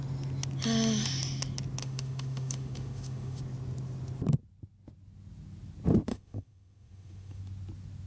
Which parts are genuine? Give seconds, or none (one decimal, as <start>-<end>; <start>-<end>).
0.0-1.8; 3.4-6.1; 7.4-8.1